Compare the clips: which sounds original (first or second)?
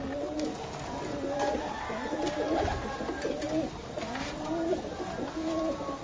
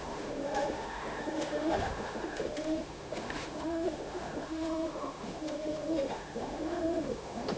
first